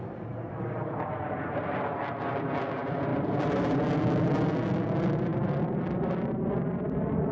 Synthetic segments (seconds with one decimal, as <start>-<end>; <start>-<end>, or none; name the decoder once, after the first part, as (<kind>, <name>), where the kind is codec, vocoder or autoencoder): 3.1-3.9 (vocoder, BigVGAN v2); 5.3-7.3